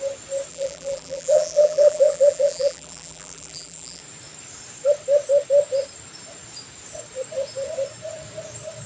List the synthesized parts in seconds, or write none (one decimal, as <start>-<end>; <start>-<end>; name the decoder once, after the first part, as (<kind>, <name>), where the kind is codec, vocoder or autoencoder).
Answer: 0.5-4.0 (vocoder, BigVGAN v2)